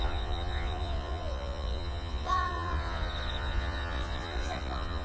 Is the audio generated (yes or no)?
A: yes